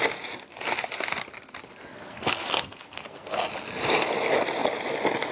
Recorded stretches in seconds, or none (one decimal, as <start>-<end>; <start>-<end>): 0.0-1.9; 3.5-5.3